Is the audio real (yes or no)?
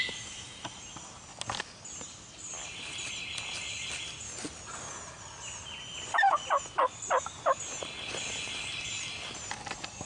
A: yes